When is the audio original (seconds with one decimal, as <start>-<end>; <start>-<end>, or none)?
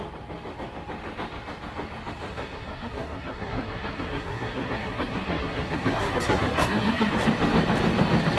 0.0-2.3; 7.1-8.4